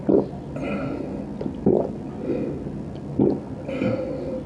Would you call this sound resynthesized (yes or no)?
no